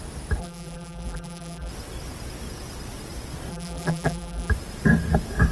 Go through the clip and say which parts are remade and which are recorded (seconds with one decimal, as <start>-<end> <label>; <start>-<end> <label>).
0.0-0.4 recorded; 0.4-1.7 remade; 1.7-3.5 recorded; 3.5-4.5 remade; 4.5-5.5 recorded